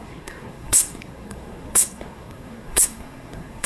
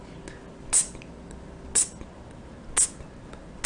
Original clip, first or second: second